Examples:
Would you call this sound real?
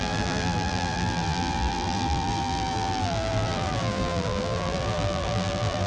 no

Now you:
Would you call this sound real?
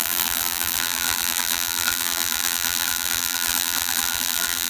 no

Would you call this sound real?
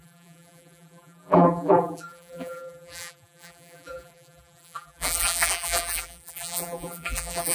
no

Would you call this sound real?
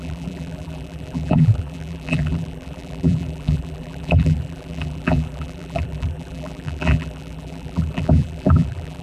no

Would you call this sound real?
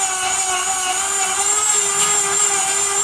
yes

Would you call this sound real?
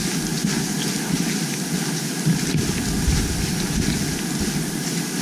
yes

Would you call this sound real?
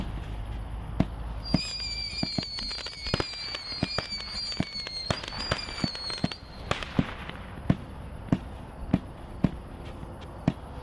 yes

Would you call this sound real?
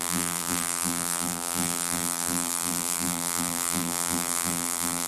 no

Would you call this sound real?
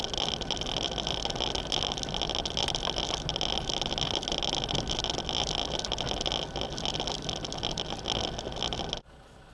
yes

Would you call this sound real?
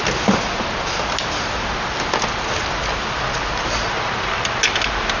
yes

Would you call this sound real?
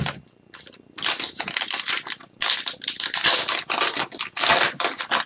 yes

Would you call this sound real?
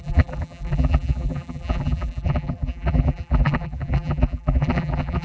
no